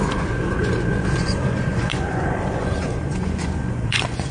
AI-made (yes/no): yes